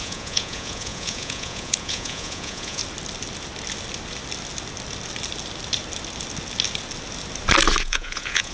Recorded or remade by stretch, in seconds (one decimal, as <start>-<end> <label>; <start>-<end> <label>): 0.0-2.8 remade; 2.8-7.8 recorded; 7.8-8.5 remade